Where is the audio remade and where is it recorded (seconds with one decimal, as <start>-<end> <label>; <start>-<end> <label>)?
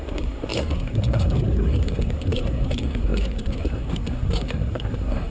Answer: 0.0-5.3 remade